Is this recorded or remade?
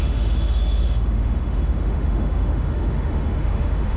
remade